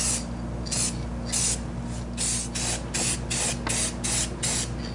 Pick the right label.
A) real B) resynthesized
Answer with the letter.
A